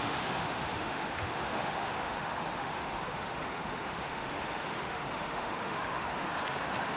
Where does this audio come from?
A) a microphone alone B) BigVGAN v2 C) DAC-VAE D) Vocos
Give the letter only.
C